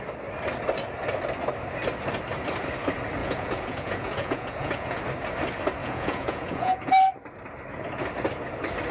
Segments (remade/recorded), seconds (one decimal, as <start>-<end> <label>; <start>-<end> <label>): 0.0-3.2 recorded; 3.2-5.0 remade; 5.0-5.8 recorded; 5.8-6.9 remade; 6.9-8.9 recorded